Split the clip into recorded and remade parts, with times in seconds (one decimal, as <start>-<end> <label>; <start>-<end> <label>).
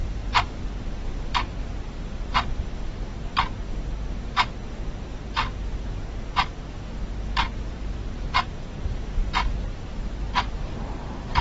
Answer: 0.0-3.1 remade; 3.1-7.7 recorded; 7.7-11.4 remade